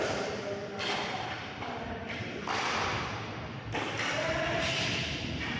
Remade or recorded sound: recorded